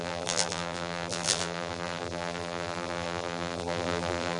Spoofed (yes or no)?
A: yes